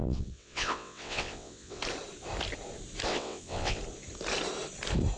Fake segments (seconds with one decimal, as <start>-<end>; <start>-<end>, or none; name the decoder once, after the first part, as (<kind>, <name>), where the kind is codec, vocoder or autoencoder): 0.0-1.8 (vocoder, WaveNeXt); 3.1-3.8